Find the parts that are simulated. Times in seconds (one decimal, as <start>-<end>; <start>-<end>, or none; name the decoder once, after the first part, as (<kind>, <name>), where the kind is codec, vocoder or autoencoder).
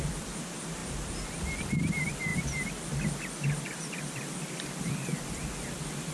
0.0-0.8 (vocoder, BigVGAN v2); 1.9-6.1